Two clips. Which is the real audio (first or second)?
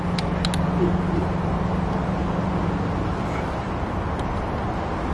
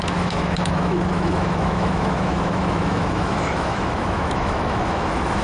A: first